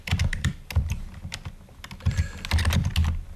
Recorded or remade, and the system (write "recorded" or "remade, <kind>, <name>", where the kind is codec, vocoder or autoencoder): recorded